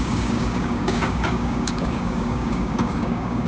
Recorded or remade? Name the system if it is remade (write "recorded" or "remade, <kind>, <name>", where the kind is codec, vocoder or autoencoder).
remade, codec, DAC